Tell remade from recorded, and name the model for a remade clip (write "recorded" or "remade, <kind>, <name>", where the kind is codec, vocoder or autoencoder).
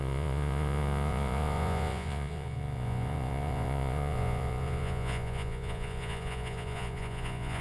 remade, vocoder, Vocos